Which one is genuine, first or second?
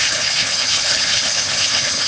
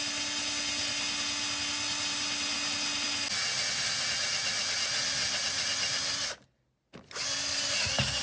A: second